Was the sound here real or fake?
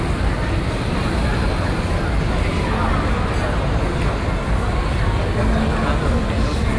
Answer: real